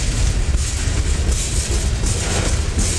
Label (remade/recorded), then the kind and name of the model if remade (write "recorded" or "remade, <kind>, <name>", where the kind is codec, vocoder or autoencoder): recorded